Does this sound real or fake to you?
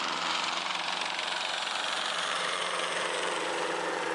fake